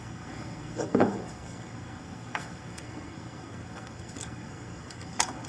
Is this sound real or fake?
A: fake